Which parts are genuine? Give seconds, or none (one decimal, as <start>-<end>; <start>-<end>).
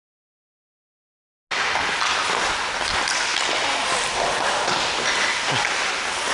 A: 0.0-6.3